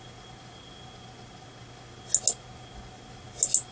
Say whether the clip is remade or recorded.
recorded